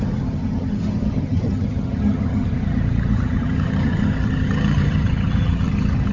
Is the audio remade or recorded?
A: remade